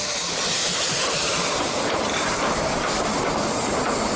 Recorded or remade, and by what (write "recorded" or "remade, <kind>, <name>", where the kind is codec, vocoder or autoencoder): remade, vocoder, BigVGAN v2